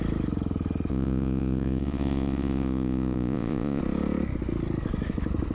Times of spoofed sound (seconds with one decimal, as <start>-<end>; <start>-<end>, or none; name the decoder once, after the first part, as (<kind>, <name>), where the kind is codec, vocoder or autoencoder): 0.9-3.8 (vocoder, Vocos)